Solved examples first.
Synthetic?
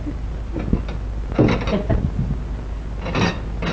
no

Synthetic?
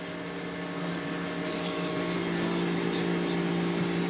no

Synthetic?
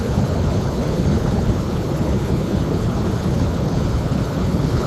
yes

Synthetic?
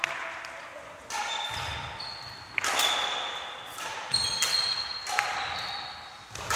no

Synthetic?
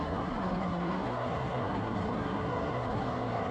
yes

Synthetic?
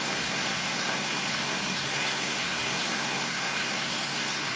yes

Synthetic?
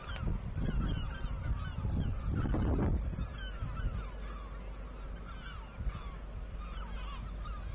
no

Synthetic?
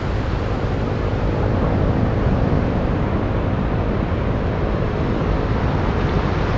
no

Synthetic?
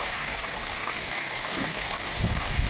yes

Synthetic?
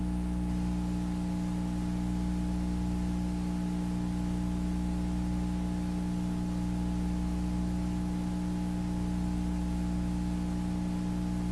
no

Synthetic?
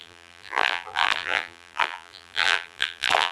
yes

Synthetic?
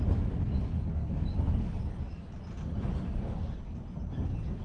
no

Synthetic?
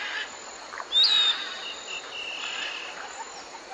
no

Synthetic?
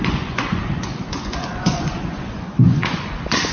yes